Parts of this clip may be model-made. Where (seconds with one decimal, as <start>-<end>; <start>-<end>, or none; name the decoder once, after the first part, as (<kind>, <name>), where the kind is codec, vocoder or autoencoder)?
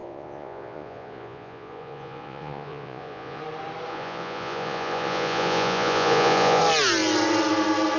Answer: 0.0-3.4 (vocoder, Vocos); 3.9-6.6